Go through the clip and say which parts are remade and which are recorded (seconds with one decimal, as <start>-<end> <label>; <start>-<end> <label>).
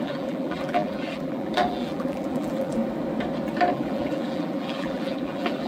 0.0-2.8 remade; 2.8-3.7 recorded; 3.7-5.7 remade